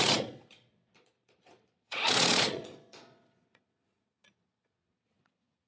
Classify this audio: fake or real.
fake